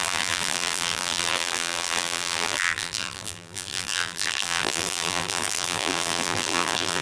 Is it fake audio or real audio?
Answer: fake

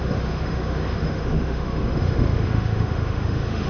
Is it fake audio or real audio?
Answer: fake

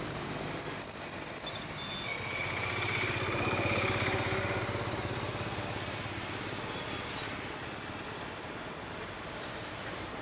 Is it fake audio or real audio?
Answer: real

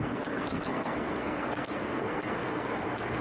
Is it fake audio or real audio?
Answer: fake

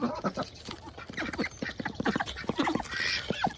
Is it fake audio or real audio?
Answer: real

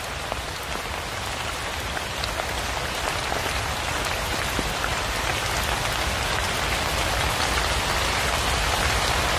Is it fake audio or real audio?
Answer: real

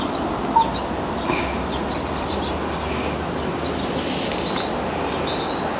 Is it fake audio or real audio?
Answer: real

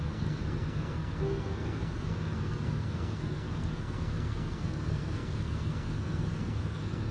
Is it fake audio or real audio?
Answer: fake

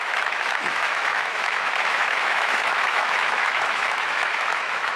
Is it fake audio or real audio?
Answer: fake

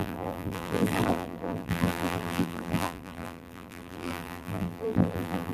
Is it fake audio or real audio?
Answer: fake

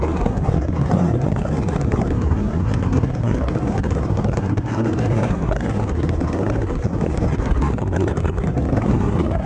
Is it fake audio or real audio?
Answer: fake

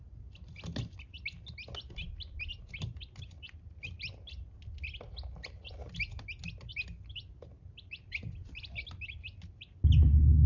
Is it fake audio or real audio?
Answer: real